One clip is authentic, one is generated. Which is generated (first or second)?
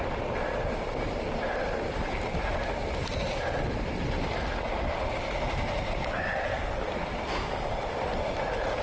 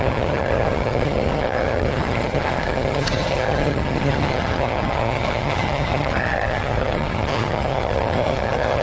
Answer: second